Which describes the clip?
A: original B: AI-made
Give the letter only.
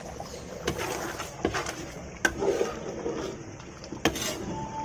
A